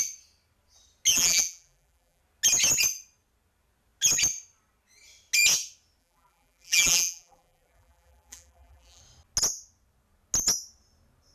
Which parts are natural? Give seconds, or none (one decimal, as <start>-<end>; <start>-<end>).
0.0-1.1; 2.2-6.0; 9.0-11.3